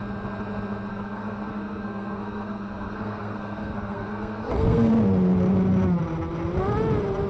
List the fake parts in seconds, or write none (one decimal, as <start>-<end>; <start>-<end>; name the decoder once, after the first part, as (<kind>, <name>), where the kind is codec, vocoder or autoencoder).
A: 0.9-4.9 (codec, SNAC)